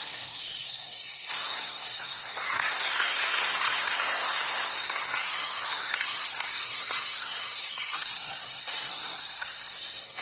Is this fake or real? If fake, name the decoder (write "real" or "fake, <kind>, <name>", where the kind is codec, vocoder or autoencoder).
fake, codec, SNAC